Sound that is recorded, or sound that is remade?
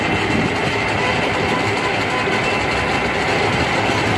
recorded